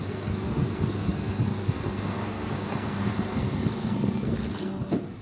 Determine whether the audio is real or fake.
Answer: fake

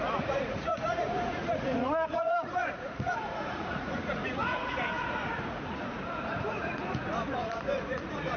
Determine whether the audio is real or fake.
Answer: fake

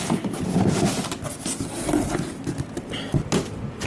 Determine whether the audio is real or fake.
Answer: real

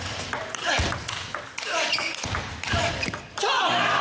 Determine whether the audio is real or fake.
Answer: fake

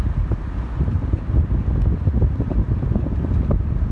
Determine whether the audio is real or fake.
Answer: real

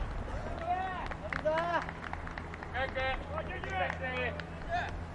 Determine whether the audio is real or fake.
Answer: real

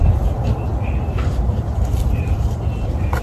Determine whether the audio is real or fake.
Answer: real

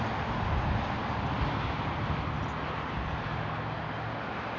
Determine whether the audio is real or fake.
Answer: real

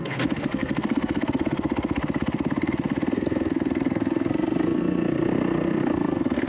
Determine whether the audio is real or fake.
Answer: fake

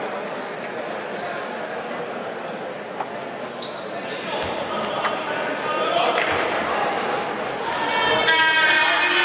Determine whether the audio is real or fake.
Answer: real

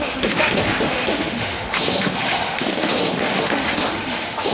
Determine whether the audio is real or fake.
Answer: fake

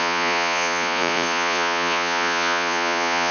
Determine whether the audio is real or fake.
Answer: fake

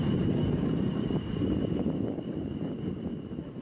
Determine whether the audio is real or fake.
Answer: real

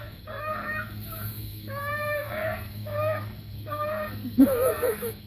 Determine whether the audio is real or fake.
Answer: fake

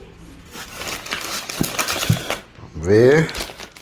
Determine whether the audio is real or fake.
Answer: real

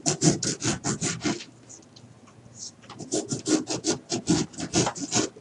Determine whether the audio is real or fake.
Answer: real